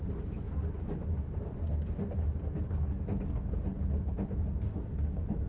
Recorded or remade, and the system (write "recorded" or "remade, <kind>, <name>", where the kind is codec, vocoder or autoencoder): recorded